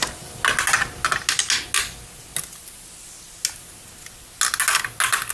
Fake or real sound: real